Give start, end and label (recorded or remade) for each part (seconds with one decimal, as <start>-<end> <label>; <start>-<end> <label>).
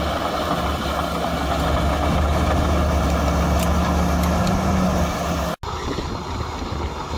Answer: 0.0-7.2 recorded